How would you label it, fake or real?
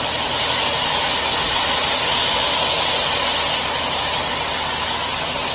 real